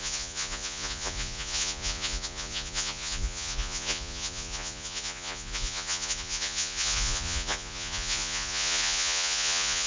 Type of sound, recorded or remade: remade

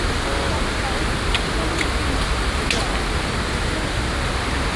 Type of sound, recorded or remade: recorded